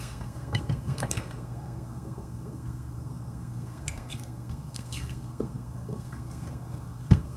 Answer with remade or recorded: remade